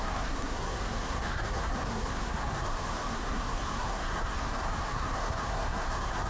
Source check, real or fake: fake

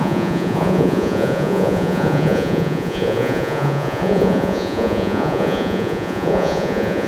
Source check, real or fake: fake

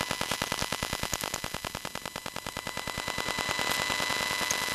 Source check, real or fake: real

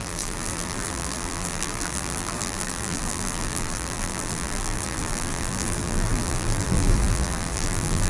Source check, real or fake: fake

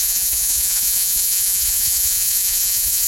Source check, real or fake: fake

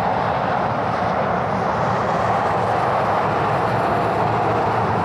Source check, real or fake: real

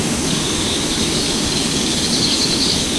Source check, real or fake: fake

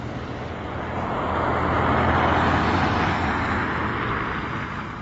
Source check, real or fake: real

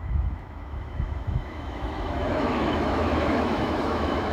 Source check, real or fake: fake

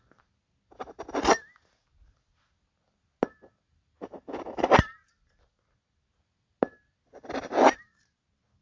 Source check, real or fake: real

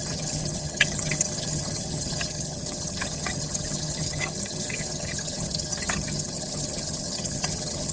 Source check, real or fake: fake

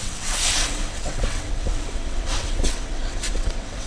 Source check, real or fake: fake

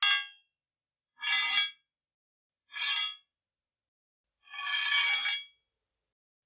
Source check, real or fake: real